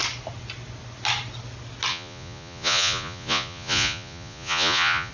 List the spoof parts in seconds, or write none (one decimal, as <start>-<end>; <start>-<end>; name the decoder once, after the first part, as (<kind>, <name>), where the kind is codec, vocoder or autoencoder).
1.9-5.1 (vocoder, Vocos)